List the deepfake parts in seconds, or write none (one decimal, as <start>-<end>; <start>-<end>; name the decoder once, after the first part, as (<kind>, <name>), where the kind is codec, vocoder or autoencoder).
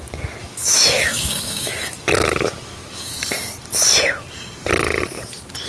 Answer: 0.4-3.2 (autoencoder, DAC-VAE)